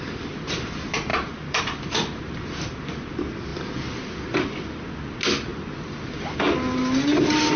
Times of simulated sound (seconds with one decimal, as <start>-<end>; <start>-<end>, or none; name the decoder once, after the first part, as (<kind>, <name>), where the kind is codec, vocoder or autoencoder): 1.1-1.8 (vocoder, BigVGAN v2); 3.5-4.8; 5.5-6.8